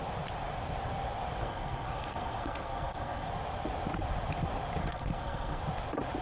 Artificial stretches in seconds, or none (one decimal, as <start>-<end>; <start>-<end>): 1.4-3.3; 4.8-5.6